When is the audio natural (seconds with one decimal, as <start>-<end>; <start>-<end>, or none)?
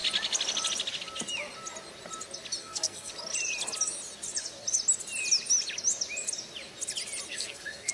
0.0-2.6; 3.1-7.3